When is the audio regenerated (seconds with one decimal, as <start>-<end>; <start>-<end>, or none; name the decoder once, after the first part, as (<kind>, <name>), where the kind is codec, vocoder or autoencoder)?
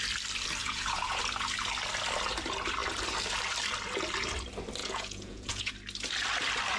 0.6-1.2 (vocoder, Vocos); 4.8-5.7